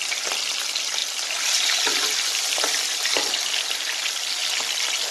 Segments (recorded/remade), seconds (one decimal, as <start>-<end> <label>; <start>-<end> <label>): 0.0-5.1 recorded

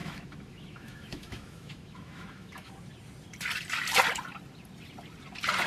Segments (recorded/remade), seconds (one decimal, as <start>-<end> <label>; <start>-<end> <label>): 0.0-2.7 remade; 2.7-5.7 recorded

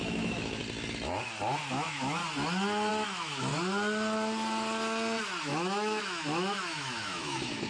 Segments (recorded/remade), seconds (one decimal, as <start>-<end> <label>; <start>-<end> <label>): 0.0-0.6 remade; 0.6-1.7 recorded; 1.7-2.2 remade; 2.2-2.9 recorded; 2.9-3.5 remade; 3.5-5.4 recorded; 5.4-7.7 remade